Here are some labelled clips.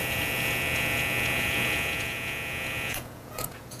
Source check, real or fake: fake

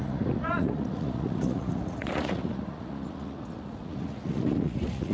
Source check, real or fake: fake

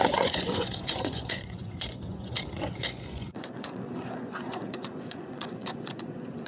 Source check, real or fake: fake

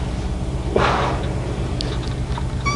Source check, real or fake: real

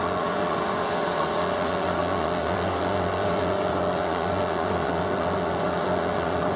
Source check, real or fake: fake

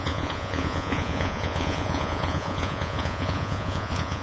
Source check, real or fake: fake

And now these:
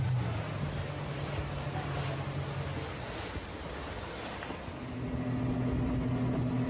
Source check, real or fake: real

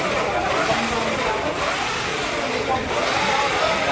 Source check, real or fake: real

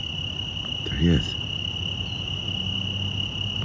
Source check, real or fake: real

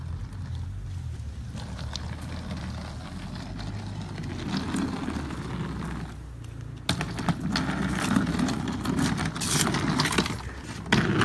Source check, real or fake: real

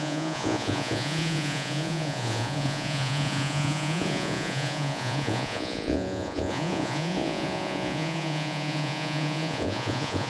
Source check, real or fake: fake